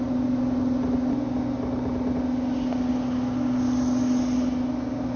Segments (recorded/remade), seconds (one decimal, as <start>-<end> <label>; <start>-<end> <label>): 0.0-5.2 recorded